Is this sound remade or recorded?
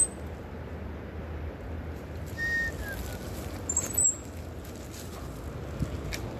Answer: recorded